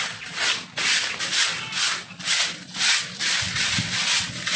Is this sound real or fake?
real